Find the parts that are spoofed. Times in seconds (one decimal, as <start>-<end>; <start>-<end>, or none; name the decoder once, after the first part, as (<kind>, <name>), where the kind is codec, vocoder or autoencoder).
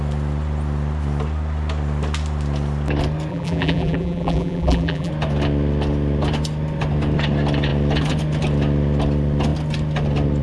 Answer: 3.3-5.1 (vocoder, BigVGAN v2)